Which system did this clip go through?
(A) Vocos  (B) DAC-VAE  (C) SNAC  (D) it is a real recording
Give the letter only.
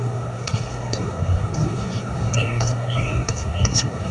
C